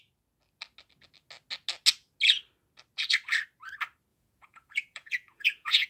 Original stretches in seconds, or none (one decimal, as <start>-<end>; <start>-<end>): 0.0-4.1

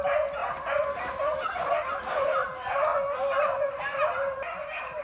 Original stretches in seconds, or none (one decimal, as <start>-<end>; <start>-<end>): 0.0-5.0

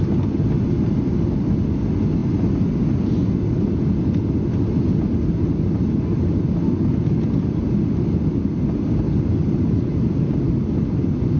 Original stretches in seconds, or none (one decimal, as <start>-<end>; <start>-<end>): 0.0-11.4

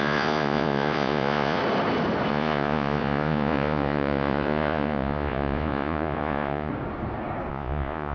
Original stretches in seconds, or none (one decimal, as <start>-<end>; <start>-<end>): 1.6-2.3; 6.7-7.5